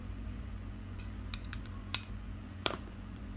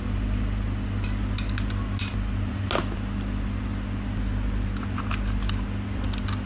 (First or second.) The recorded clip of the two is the second